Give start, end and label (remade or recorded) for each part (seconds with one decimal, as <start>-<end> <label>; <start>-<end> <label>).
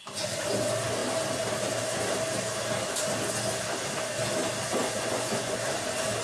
0.0-4.8 recorded; 4.8-5.6 remade; 5.6-6.2 recorded